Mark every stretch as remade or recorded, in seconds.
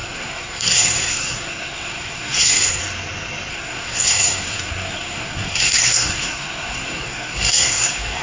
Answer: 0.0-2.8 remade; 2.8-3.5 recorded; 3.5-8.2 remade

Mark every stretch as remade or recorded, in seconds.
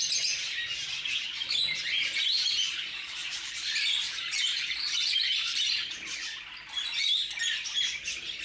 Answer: 0.0-3.2 recorded; 3.2-5.7 remade; 5.7-8.4 recorded